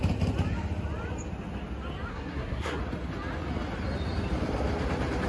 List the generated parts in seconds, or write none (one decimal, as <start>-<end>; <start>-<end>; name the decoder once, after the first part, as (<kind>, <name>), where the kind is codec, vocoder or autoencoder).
2.1-2.8 (codec, SNAC)